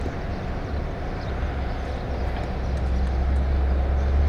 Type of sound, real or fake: real